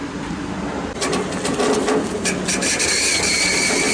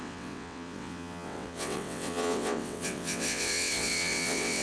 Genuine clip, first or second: first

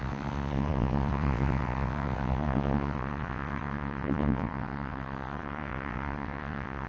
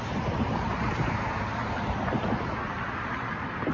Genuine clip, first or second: second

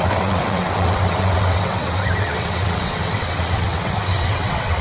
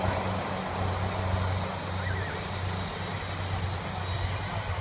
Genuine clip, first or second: second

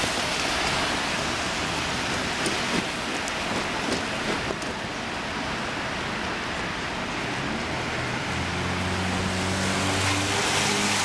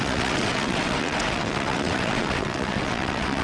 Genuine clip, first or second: first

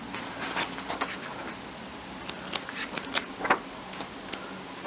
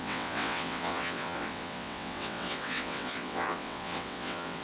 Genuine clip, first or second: first